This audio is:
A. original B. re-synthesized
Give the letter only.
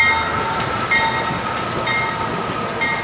A